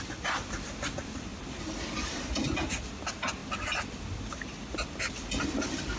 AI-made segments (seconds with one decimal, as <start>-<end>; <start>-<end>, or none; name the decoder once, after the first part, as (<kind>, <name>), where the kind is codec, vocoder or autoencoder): none